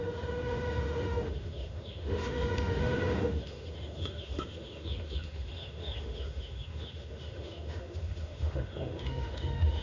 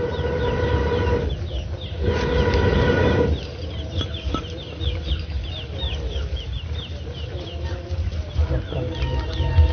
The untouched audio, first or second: second